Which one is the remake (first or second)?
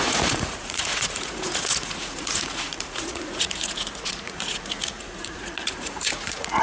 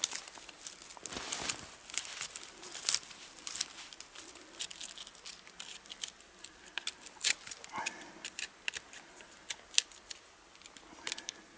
first